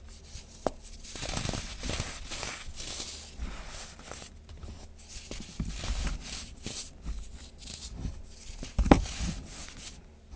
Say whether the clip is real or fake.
real